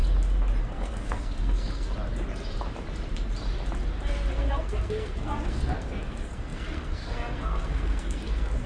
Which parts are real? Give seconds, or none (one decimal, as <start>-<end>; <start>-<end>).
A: 0.0-0.6; 1.9-4.3